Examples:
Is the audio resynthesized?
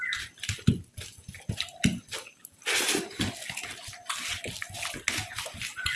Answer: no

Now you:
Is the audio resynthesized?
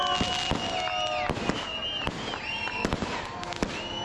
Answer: no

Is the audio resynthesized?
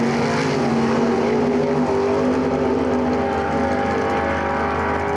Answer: no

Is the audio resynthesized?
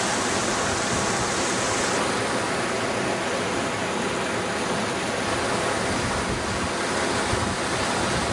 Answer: no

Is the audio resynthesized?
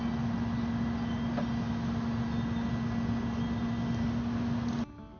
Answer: no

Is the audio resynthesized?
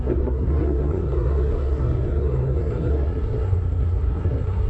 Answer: yes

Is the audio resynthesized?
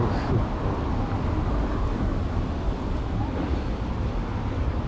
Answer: no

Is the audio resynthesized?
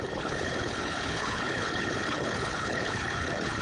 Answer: yes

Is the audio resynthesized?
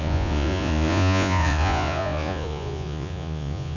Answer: yes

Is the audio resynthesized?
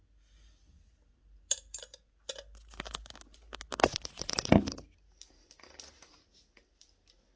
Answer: no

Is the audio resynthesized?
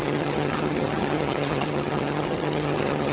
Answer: yes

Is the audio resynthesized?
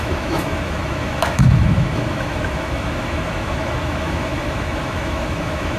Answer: yes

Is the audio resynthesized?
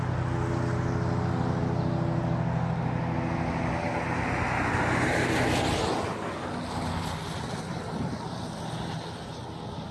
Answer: no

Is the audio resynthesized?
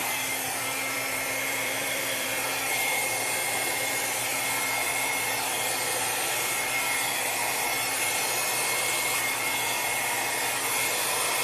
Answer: yes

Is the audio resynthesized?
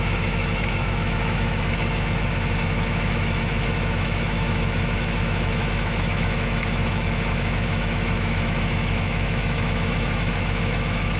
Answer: yes